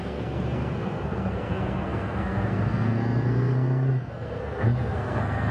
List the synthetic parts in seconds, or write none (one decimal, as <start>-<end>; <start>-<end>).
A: 0.0-5.5